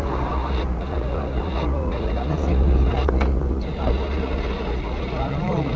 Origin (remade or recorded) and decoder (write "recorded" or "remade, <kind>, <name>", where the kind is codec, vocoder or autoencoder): remade, vocoder, Vocos